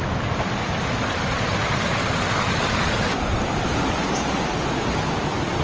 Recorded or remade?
recorded